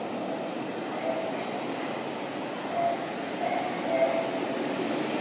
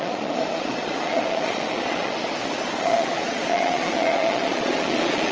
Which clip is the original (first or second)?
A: first